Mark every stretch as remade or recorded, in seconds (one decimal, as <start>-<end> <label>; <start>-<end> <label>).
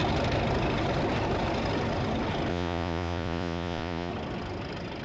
0.0-2.5 recorded; 2.5-4.1 remade; 4.1-5.0 recorded